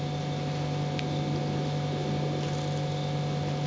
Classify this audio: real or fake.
real